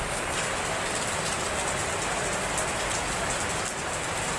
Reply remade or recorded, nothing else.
recorded